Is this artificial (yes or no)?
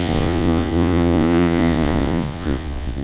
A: yes